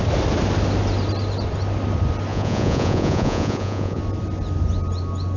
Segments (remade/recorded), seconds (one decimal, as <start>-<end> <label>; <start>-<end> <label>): 0.0-2.3 recorded; 2.3-4.0 remade; 4.0-5.4 recorded